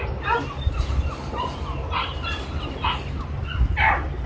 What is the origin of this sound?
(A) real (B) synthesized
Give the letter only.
A